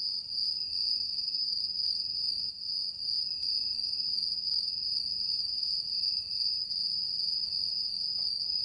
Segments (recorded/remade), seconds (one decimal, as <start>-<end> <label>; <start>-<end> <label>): 0.0-0.9 recorded; 0.9-1.6 remade; 1.6-8.6 recorded